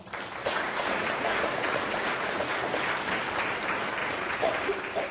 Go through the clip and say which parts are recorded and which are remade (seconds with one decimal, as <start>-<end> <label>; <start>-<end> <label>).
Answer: 0.0-0.4 recorded; 0.4-2.6 remade; 2.6-4.0 recorded; 4.0-4.5 remade; 4.5-5.1 recorded